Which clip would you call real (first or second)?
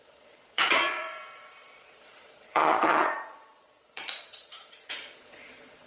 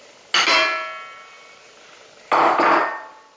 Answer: second